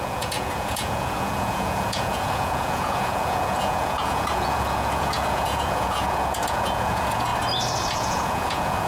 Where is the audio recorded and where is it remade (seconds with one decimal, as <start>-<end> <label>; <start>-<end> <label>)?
0.0-7.3 remade; 7.3-7.9 recorded; 7.9-8.9 remade